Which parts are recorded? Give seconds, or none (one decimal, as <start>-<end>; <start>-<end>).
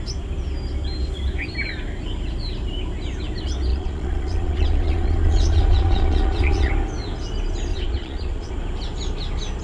0.0-3.7; 6.7-7.7; 8.5-9.6